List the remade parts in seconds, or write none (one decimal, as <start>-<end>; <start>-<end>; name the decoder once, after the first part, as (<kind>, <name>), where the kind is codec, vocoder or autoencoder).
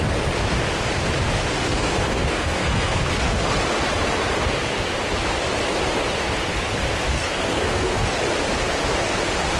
1.5-3.0 (codec, SNAC); 7.1-8.2